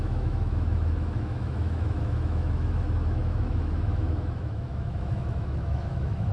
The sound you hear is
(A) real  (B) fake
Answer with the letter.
B